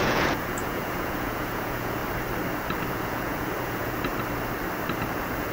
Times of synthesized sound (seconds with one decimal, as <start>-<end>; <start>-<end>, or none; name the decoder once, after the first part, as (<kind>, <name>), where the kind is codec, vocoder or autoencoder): 0.0-2.0 (vocoder, Vocos); 2.9-4.1; 5.1-5.5